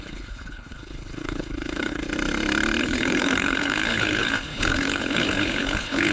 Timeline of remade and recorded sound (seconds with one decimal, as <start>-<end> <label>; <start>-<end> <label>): 0.0-2.0 remade; 2.0-2.8 recorded; 2.8-6.1 remade